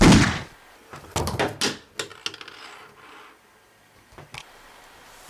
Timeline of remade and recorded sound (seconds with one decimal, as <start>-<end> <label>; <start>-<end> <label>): 0.0-5.3 recorded